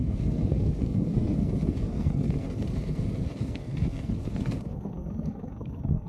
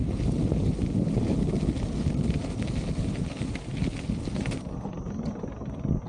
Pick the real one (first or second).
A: second